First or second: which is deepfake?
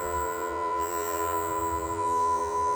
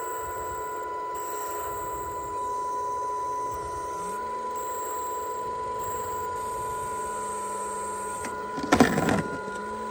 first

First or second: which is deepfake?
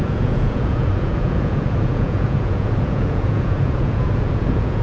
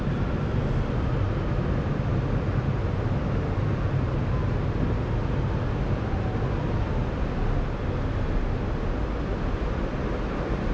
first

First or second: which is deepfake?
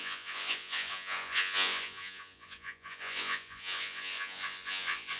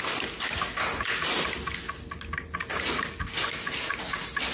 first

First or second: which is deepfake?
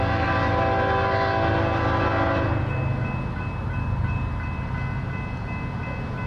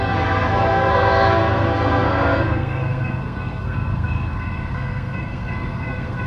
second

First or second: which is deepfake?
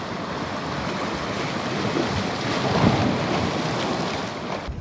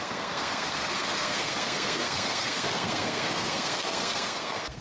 second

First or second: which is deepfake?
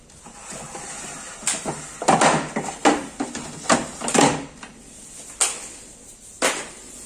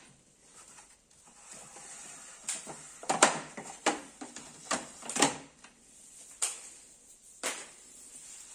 second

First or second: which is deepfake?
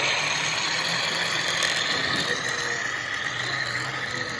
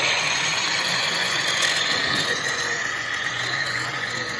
second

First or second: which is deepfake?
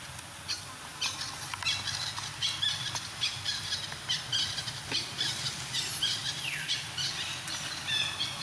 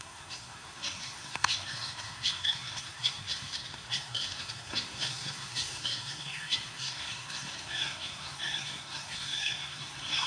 second